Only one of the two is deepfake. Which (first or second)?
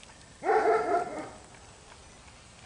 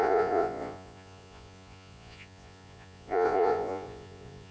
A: second